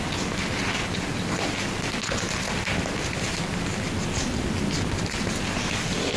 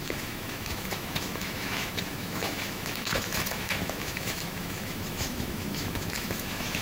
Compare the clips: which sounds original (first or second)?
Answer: first